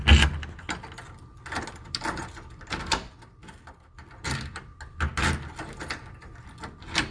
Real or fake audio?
real